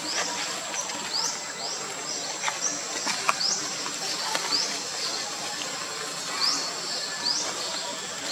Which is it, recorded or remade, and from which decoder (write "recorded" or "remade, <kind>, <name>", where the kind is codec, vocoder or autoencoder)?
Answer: recorded